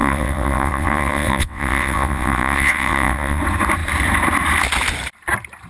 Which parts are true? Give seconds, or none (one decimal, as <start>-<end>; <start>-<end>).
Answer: 3.4-5.7